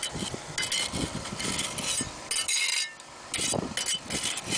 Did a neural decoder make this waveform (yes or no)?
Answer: no